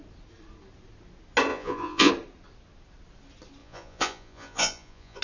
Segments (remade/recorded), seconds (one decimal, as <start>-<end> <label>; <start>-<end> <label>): 0.0-1.5 recorded; 1.5-2.1 remade; 2.1-3.6 recorded; 3.6-5.2 remade